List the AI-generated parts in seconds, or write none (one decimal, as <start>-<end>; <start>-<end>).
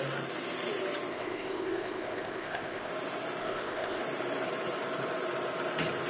1.1-2.9; 3.4-4.0